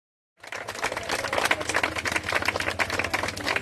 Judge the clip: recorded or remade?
recorded